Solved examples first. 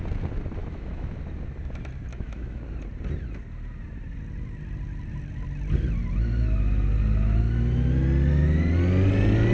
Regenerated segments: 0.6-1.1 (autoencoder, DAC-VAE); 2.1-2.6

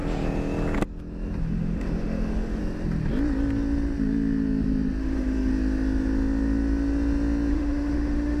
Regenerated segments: 1.4-2.6 (autoencoder, DAC-VAE); 5.0-5.5; 7.5-8.4

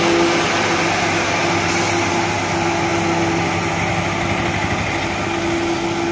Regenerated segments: none

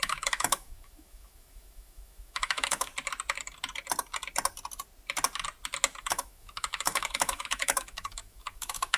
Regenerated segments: 0.0-2.9 (autoencoder, DAC-VAE); 6.0-9.0

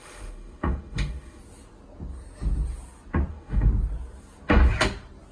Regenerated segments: 0.0-1.4 (autoencoder, DAC-VAE); 3.3-3.7

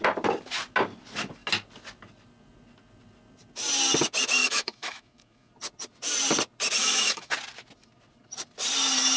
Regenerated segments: 4.4-5.5 (autoencoder, DAC-VAE); 6.8-7.3